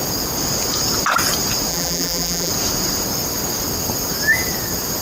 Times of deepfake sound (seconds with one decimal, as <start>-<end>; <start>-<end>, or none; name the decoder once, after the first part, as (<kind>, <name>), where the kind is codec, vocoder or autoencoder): 1.7-2.5 (vocoder, BigVGAN v2)